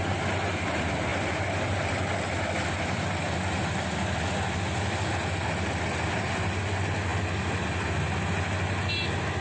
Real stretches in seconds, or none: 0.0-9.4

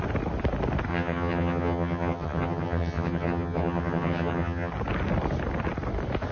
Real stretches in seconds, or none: 0.0-0.9; 4.7-6.3

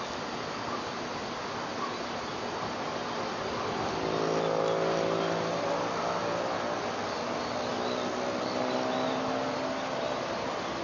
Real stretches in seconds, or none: 0.0-10.8

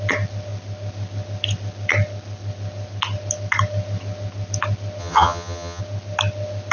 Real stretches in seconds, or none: 0.0-5.0; 5.8-6.7